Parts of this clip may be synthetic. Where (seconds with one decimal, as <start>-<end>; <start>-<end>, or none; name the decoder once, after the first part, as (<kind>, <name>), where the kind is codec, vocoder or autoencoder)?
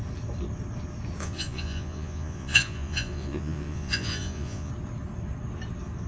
1.2-4.7 (vocoder, Vocos)